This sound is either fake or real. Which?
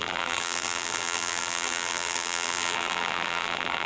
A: fake